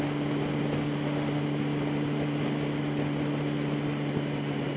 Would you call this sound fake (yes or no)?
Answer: no